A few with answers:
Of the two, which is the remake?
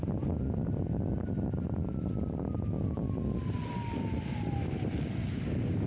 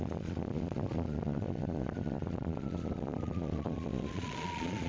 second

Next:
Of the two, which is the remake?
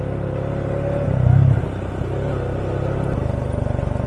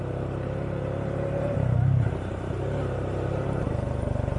second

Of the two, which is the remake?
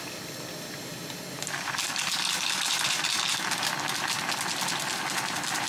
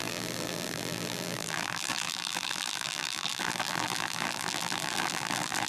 second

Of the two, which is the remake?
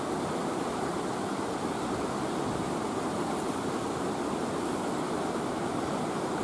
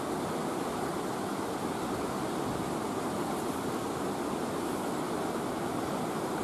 first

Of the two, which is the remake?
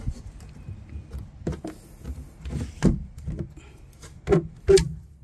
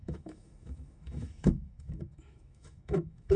second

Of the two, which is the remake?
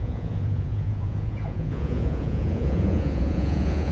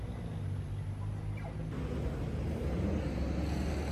first